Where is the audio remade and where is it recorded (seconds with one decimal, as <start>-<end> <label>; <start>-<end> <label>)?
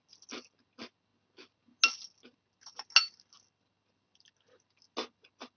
0.0-5.6 recorded